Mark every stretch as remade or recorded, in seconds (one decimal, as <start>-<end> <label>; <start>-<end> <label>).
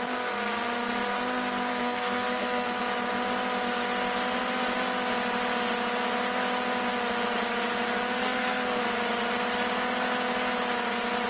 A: 0.0-1.7 recorded; 1.7-2.8 remade; 2.8-8.2 recorded; 8.2-8.8 remade; 8.8-11.3 recorded